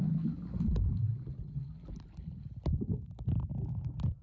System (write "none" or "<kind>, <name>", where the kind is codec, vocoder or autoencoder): none